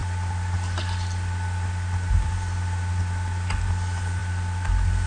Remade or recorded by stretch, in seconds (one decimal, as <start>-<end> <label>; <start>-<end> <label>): 0.0-5.1 recorded